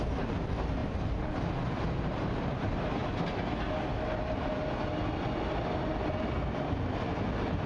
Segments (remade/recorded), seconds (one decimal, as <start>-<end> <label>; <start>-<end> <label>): 0.0-7.7 recorded